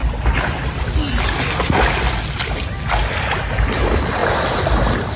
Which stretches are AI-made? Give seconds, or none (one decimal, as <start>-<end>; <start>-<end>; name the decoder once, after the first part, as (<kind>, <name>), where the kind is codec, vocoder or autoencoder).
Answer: none